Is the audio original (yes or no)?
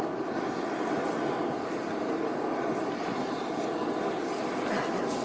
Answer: yes